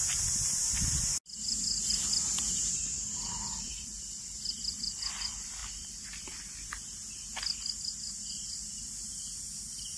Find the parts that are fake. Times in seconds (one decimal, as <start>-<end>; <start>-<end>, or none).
none